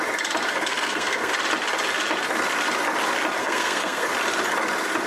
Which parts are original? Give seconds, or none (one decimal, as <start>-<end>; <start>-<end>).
0.0-0.5; 1.3-3.4; 4.1-5.1